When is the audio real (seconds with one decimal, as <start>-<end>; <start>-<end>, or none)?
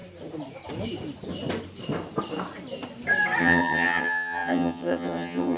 0.0-3.4